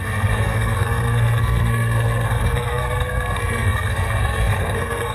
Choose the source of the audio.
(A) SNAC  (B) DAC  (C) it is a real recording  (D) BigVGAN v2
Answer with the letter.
A